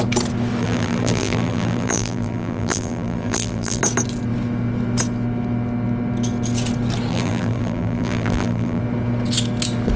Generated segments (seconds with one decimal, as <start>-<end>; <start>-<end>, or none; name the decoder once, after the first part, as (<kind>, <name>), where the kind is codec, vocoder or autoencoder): 0.6-3.8 (vocoder, BigVGAN v2); 7.1-8.8